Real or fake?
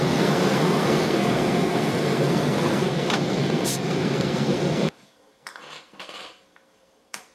fake